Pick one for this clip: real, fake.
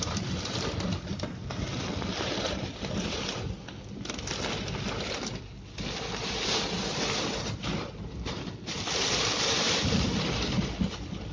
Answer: real